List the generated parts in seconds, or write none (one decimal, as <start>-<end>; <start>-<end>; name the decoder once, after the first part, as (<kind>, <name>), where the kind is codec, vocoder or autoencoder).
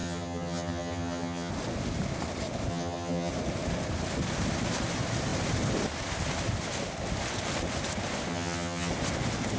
0.0-1.5 (vocoder, HiFi-GAN); 2.7-3.3; 8.3-8.9